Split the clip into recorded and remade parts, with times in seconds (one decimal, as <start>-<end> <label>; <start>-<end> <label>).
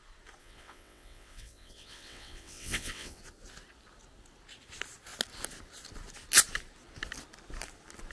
0.0-0.4 recorded; 0.4-3.2 remade; 3.2-8.1 recorded